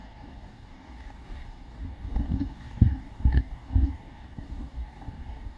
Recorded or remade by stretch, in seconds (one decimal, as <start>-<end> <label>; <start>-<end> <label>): 0.0-5.6 remade